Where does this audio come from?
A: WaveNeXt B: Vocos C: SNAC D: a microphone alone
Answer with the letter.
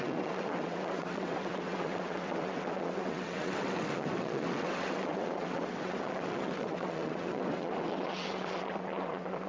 A